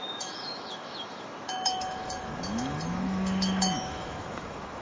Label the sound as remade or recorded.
remade